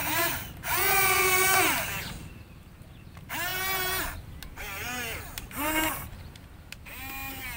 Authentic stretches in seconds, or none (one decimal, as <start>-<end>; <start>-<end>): 0.0-7.6